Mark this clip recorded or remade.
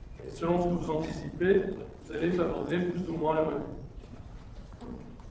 remade